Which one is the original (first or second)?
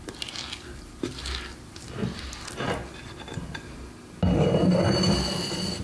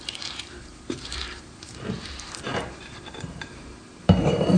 first